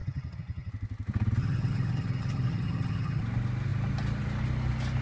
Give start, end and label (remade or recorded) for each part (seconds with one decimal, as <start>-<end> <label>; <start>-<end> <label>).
0.0-0.7 remade; 0.7-1.4 recorded; 1.4-3.2 remade; 3.2-5.0 recorded